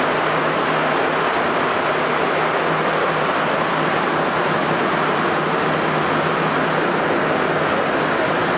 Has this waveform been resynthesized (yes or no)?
no